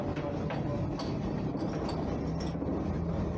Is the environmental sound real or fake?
real